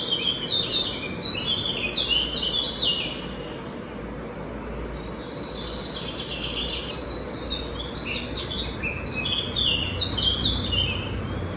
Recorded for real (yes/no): yes